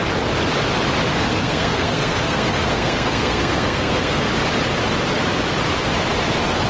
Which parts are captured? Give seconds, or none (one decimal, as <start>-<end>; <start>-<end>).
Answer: 0.0-1.1; 4.3-6.7